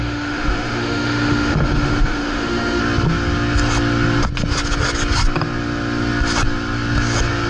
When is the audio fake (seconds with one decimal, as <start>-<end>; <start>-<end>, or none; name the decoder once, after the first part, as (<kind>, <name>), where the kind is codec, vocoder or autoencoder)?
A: 0.0-2.8 (autoencoder, DAC-VAE)